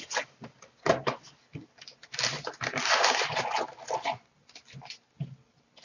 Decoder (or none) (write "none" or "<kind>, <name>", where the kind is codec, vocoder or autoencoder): none